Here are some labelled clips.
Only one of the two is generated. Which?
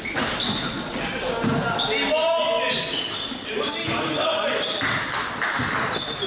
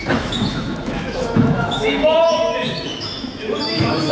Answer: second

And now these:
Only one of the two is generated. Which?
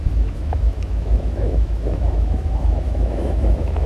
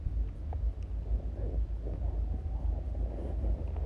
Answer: first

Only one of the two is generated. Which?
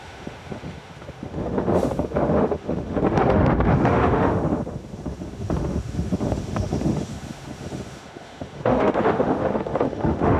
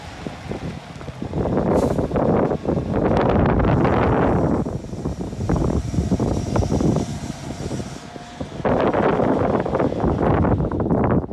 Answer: first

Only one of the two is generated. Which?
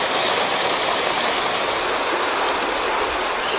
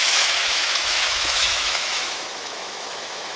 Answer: second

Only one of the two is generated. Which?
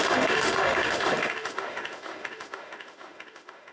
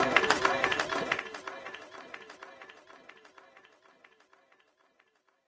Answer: first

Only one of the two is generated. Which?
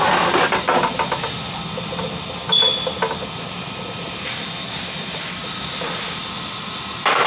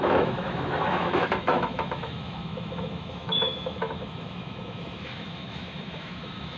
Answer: second